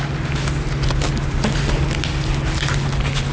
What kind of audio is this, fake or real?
real